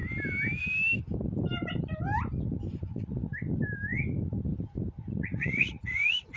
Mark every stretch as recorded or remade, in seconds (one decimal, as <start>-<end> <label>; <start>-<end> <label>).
0.0-2.8 recorded; 2.8-3.3 remade; 3.3-5.0 recorded; 5.0-6.4 remade